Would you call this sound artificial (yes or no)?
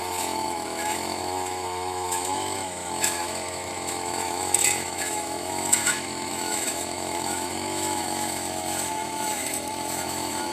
yes